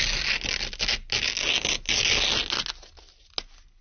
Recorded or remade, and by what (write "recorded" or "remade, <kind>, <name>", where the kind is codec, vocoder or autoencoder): recorded